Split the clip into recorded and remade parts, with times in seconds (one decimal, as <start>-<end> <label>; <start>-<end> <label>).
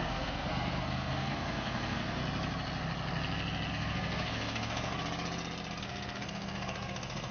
0.0-2.2 remade; 2.2-3.7 recorded; 3.7-4.9 remade; 4.9-5.8 recorded; 5.8-7.3 remade